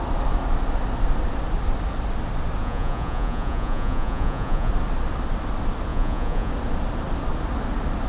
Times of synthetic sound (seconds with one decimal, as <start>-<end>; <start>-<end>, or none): 2.6-4.7; 5.9-6.5